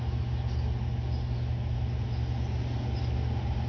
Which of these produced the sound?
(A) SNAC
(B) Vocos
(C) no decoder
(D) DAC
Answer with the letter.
C